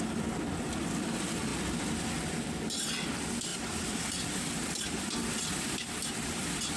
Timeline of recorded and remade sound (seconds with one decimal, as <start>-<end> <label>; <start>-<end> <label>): 0.0-6.8 recorded